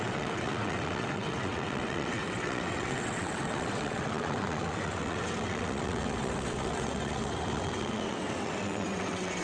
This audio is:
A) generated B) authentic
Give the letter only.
A